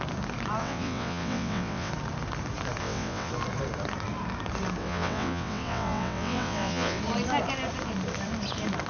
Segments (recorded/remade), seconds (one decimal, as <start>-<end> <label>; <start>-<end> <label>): 0.0-0.6 recorded; 0.6-1.9 remade; 1.9-2.8 recorded; 2.8-3.3 remade; 3.3-4.8 recorded; 4.8-7.0 remade; 7.0-8.9 recorded